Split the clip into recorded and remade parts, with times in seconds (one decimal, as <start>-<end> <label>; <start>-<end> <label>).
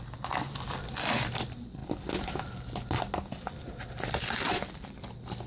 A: 0.0-1.8 remade; 1.8-4.1 recorded; 4.1-5.5 remade